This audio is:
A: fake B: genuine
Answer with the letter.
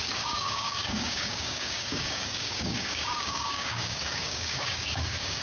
A